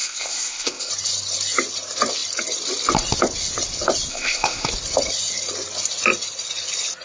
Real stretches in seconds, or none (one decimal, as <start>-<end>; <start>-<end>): 0.9-4.1; 4.7-7.0